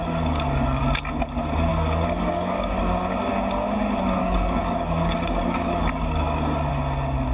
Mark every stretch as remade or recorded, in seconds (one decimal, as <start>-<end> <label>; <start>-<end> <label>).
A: 0.0-0.8 remade; 0.8-1.7 recorded; 1.7-2.8 remade; 2.8-4.2 recorded; 4.2-6.7 remade; 6.7-7.3 recorded